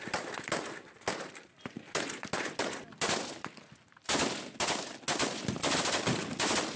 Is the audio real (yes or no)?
yes